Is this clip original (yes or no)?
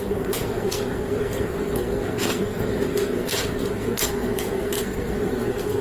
no